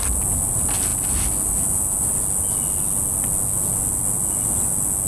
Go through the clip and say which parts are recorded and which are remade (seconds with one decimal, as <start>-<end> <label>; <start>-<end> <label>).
0.0-5.1 recorded